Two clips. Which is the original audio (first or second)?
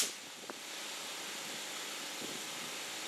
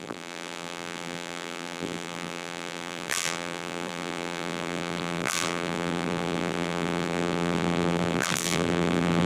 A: first